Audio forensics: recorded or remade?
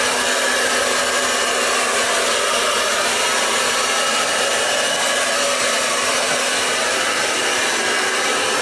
recorded